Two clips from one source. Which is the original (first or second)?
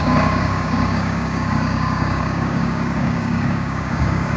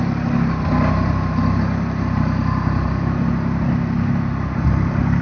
second